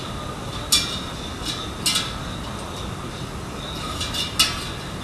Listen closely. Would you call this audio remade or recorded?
recorded